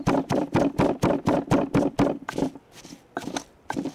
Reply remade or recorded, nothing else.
recorded